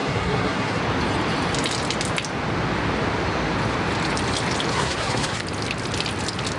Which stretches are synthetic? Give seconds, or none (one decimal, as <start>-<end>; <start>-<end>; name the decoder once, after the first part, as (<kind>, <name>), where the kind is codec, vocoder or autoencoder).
0.0-0.8 (codec, SNAC); 4.7-5.4